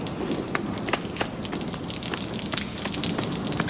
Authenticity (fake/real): real